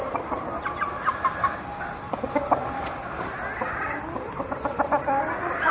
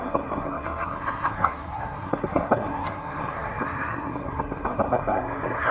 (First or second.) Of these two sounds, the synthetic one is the second